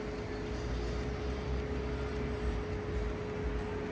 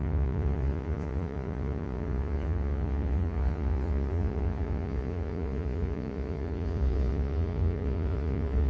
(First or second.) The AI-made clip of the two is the second